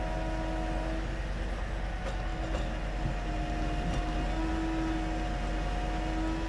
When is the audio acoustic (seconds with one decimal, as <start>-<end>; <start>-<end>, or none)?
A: 0.0-6.5